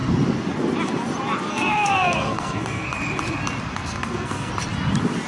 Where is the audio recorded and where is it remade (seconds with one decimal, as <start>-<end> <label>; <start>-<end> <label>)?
0.0-1.5 recorded; 1.5-2.9 remade; 2.9-3.7 recorded; 3.7-4.5 remade; 4.5-5.3 recorded